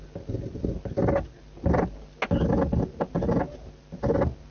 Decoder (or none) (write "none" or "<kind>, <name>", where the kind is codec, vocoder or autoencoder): none